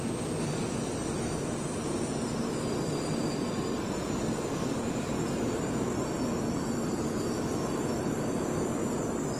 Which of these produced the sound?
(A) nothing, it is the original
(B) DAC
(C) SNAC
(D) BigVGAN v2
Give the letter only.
A